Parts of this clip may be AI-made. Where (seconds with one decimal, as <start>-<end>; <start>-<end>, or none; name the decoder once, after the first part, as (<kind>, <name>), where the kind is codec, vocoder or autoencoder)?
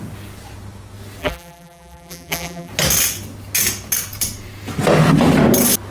1.2-2.7 (vocoder, BigVGAN v2)